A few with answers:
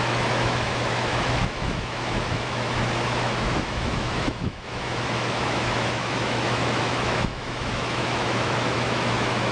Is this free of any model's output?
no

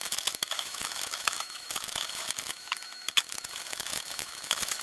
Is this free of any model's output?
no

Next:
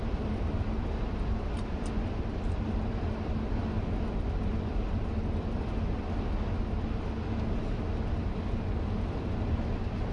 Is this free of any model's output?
yes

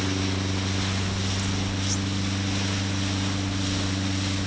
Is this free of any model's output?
yes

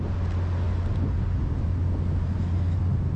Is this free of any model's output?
yes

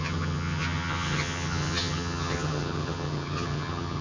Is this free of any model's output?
no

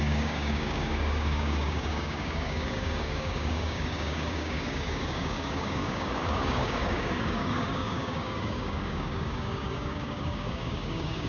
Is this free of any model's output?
no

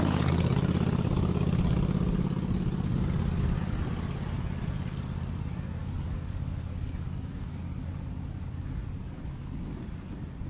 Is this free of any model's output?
yes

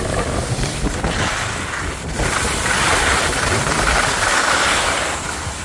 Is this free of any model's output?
yes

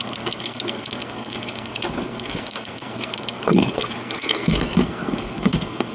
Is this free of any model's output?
no